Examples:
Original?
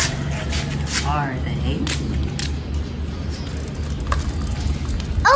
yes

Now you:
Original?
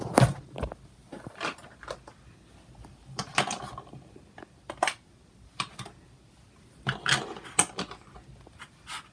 yes